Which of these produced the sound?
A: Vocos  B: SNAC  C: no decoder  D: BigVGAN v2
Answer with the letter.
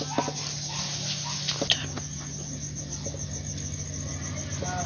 C